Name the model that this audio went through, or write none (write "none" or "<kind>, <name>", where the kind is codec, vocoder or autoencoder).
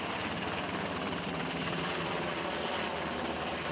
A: vocoder, BigVGAN v2